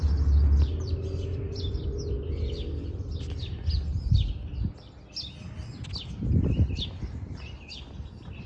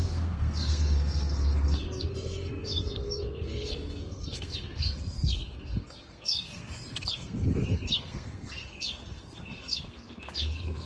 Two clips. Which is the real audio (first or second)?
first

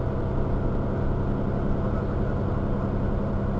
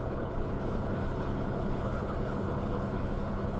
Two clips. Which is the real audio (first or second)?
first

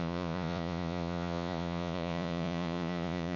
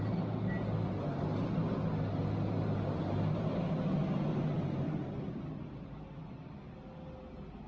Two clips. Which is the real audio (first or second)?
second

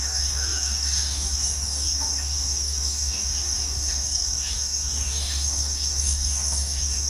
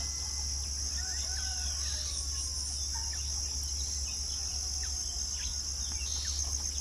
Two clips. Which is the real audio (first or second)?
second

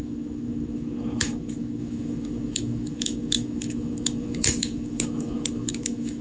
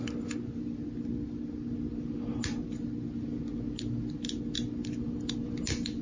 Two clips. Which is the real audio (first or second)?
second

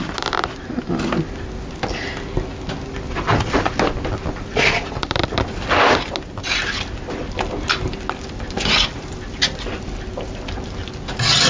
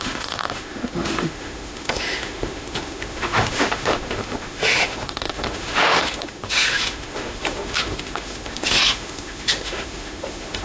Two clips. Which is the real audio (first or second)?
first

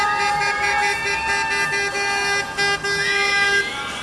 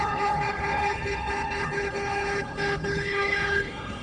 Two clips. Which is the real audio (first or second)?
first